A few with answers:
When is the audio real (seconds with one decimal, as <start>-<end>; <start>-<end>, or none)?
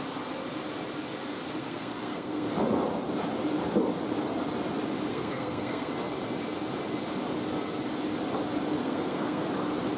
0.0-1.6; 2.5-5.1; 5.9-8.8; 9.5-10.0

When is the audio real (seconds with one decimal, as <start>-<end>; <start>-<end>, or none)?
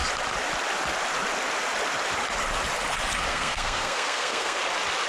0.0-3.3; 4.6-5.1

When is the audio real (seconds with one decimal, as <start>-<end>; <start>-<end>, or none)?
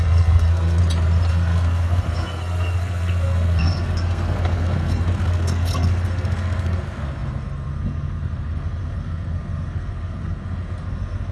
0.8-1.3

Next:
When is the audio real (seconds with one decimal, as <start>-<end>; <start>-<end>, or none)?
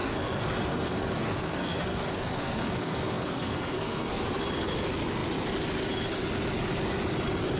4.1-7.6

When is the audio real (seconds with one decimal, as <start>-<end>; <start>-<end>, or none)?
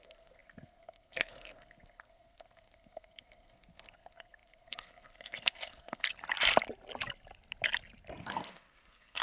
6.1-8.2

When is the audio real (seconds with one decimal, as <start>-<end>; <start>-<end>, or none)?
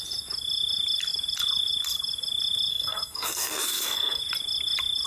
0.0-2.7; 4.2-5.1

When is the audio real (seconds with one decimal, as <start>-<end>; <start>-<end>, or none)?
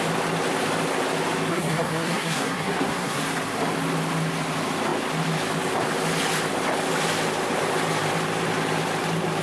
0.0-1.5; 3.2-9.4